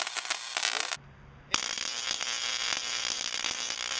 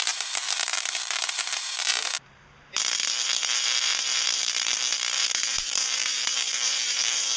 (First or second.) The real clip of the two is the first